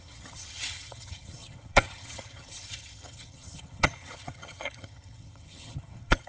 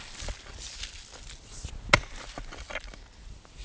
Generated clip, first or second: first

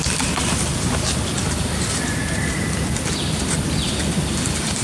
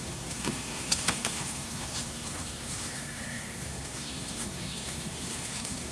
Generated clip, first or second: second